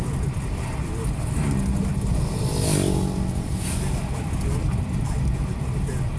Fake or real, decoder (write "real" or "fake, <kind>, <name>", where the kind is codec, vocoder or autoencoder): real